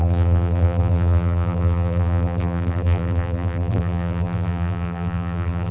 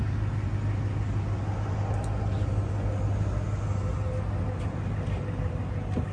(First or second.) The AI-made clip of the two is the first